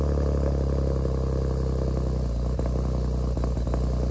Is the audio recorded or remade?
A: recorded